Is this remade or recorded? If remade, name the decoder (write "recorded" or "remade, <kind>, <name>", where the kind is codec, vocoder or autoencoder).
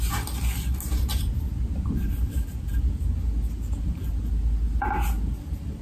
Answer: recorded